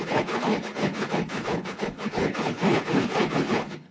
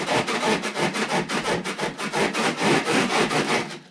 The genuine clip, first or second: second